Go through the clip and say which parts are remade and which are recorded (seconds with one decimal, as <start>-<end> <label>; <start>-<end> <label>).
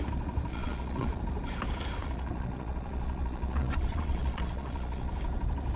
0.0-0.5 recorded; 0.5-1.2 remade; 1.2-2.0 recorded; 2.0-5.1 remade; 5.1-5.8 recorded